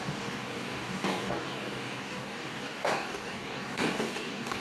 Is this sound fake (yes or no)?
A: yes